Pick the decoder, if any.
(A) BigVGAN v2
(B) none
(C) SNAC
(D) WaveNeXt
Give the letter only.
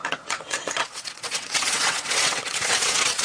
D